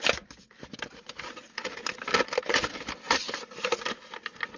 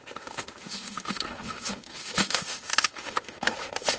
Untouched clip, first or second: first